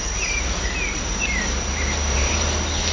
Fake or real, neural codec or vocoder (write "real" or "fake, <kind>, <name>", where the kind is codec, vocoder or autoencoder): fake, vocoder, BigVGAN v2